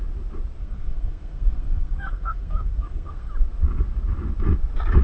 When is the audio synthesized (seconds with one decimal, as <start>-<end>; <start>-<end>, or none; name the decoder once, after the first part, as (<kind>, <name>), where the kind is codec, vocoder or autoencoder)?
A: 0.6-3.3 (codec, SNAC)

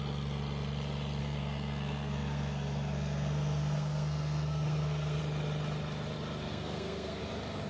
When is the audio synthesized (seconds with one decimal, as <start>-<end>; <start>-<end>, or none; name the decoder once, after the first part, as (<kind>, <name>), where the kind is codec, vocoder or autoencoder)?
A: 1.2-5.2 (codec, SNAC); 6.5-7.2

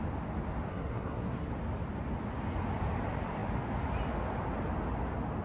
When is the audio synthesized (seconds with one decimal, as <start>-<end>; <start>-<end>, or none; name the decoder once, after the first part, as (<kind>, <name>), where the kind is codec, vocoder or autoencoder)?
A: 0.7-1.5 (codec, SNAC)